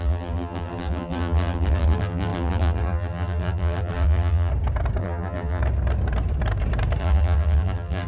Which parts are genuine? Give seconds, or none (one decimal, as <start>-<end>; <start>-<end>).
4.5-5.0; 5.6-7.0